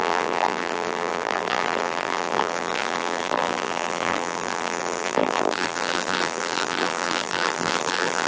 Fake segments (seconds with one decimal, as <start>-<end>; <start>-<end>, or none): 0.0-8.3